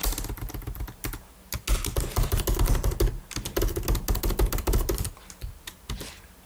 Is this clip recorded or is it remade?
recorded